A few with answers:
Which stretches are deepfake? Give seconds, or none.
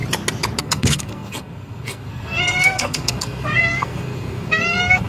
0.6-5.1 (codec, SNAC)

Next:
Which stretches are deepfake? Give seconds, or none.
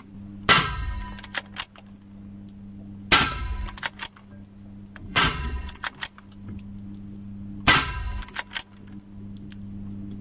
5.0-5.8 (vocoder, Vocos)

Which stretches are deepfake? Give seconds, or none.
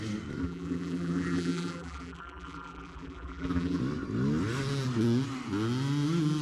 0.4-3.8 (vocoder, BigVGAN v2)